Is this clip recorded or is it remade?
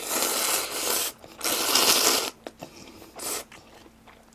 recorded